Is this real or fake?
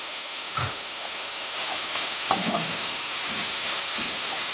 fake